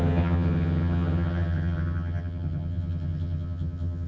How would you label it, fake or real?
fake